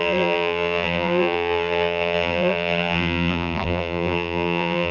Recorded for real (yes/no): no